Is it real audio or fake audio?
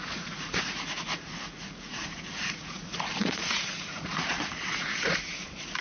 fake